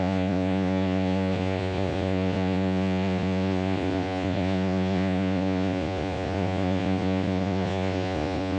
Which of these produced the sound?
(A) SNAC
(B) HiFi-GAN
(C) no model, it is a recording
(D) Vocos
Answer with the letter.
D